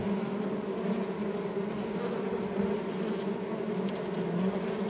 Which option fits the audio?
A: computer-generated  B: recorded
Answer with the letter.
B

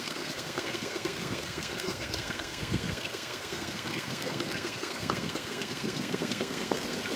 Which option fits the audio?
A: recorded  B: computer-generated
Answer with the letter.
B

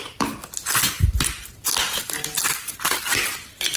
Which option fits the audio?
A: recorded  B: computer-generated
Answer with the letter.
A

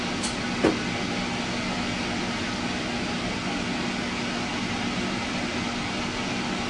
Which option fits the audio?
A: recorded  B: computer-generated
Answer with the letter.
A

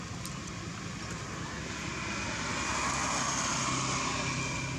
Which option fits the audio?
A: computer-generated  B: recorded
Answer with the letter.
B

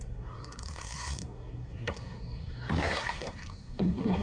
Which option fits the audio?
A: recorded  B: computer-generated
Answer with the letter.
B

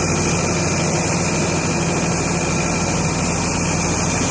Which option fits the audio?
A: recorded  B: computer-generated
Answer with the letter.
A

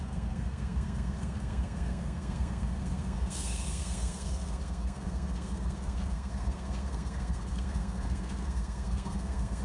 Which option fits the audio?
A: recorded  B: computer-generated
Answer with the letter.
B